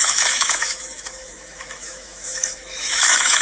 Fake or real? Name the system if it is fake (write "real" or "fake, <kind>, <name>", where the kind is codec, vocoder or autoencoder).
fake, autoencoder, DAC-VAE